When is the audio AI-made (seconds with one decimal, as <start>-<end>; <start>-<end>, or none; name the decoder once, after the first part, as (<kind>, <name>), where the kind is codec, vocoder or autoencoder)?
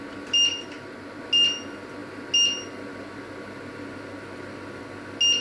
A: 0.5-1.2 (vocoder, BigVGAN v2)